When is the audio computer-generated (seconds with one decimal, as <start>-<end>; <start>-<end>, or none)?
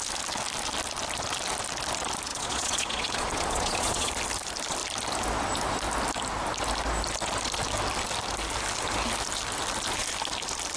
2.3-4.1